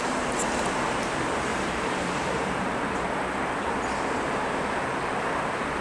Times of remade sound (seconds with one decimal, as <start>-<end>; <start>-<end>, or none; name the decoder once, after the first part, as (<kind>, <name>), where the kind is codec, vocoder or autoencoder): 1.5-3.4 (vocoder, BigVGAN v2)